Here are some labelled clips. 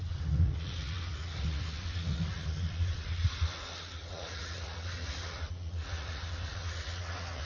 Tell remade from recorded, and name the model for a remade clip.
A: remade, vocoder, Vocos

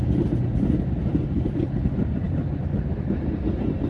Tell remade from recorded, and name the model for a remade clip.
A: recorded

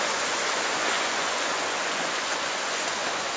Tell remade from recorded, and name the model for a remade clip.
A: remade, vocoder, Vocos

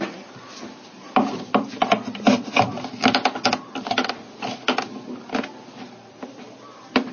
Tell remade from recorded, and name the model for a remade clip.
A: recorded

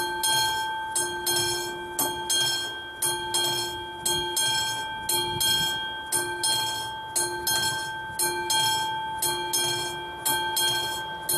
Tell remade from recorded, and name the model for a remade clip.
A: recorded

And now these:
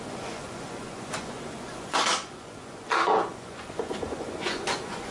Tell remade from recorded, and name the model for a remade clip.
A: remade, vocoder, Vocos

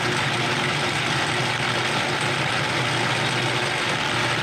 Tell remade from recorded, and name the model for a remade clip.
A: recorded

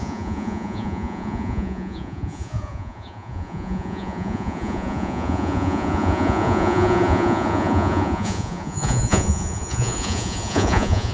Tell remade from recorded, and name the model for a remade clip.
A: remade, vocoder, Vocos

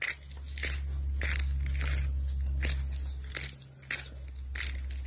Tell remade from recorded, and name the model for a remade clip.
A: recorded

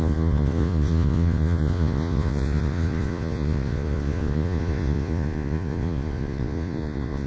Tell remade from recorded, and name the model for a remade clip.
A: remade, vocoder, Vocos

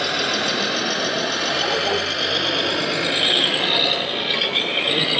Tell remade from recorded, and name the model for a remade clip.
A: recorded